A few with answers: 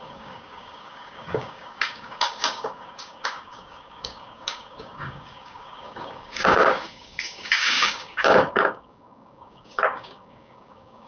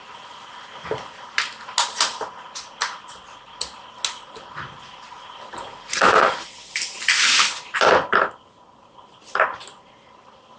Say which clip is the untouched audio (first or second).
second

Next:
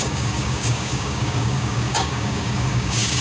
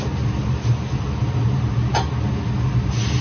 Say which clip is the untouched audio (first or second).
second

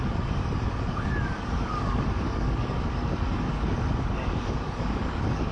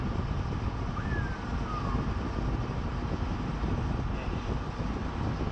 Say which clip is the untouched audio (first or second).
second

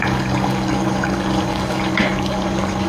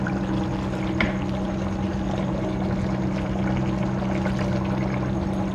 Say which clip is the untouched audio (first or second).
second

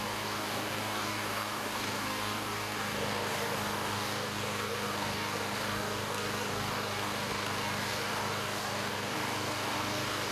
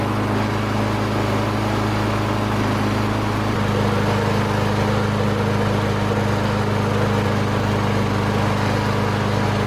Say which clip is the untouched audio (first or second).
second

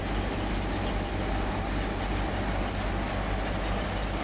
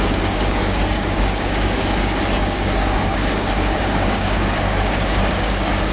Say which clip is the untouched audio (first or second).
first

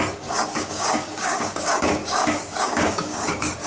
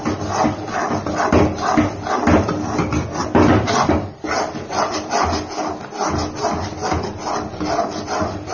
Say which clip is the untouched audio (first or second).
second